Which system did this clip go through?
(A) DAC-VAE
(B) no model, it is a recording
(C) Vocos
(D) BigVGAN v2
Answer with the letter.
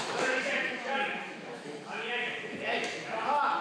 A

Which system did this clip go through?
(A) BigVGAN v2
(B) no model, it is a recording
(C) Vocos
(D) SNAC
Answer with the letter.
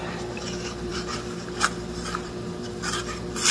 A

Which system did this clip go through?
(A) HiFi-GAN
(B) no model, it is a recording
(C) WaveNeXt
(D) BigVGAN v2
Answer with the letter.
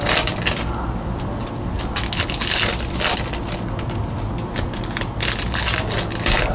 B